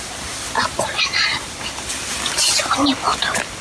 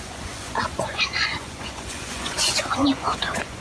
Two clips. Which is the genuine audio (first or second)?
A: first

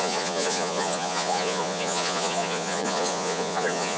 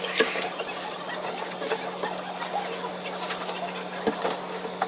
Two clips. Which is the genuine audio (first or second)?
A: second